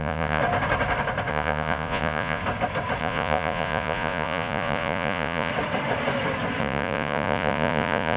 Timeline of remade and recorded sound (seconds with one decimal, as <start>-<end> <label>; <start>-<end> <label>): 0.0-0.4 remade; 0.4-1.3 recorded; 1.3-2.4 remade; 2.4-3.0 recorded; 3.0-5.5 remade; 5.5-6.6 recorded; 6.6-8.2 remade